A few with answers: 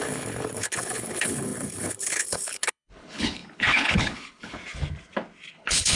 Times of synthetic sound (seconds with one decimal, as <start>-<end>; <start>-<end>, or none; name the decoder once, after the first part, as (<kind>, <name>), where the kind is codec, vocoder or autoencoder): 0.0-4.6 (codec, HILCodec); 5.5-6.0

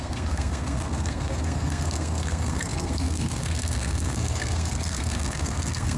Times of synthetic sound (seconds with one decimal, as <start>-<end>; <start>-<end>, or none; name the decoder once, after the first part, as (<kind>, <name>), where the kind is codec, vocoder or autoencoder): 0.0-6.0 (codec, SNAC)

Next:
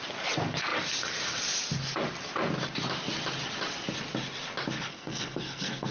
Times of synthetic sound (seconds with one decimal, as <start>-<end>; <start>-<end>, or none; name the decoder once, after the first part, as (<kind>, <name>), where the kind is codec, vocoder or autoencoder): 4.9-5.9 (codec, SNAC)

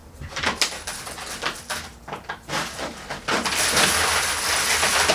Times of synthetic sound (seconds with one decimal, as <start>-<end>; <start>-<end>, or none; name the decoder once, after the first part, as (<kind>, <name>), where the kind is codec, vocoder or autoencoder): 0.0-1.0 (vocoder, BigVGAN v2); 1.9-5.1

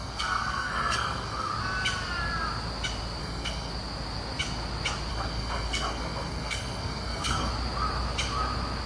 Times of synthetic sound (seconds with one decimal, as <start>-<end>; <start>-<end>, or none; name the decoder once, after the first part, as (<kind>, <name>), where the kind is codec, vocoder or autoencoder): 0.0-1.5 (codec, SNAC); 3.2-3.7; 5.1-7.5

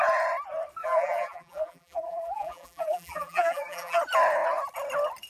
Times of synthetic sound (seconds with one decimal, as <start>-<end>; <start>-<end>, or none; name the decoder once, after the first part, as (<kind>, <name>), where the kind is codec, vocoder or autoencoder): 0.8-4.0 (vocoder, BigVGAN v2)

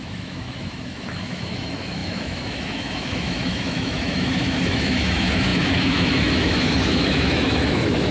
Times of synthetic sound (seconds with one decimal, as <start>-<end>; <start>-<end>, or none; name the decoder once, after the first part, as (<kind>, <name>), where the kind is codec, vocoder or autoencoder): 0.0-8.1 (autoencoder, DAC-VAE)

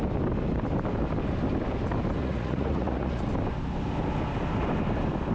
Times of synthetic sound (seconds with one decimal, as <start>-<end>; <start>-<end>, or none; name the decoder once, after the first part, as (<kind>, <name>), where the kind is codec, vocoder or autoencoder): 2.2-3.2 (vocoder, Vocos)